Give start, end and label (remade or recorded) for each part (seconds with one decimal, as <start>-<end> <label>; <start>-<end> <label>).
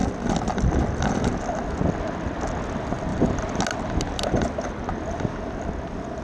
0.0-6.2 recorded